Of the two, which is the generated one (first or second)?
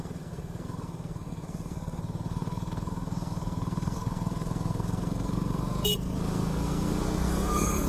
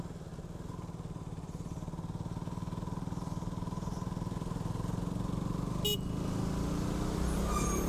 first